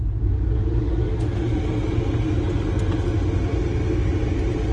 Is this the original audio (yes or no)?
yes